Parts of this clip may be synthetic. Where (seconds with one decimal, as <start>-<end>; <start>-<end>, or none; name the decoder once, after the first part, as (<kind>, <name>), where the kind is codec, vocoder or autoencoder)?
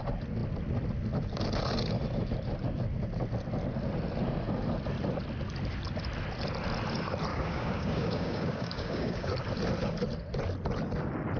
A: 7.3-9.3 (codec, DAC)